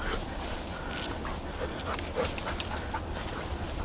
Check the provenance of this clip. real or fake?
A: fake